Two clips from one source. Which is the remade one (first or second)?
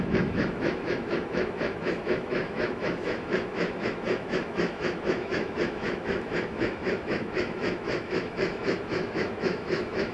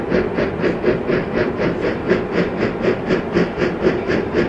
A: first